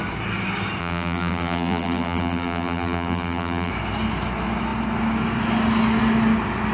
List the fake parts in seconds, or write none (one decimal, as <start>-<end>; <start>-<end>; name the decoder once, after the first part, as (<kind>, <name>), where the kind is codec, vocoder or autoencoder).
0.8-3.7 (vocoder, BigVGAN v2)